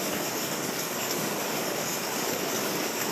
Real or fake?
fake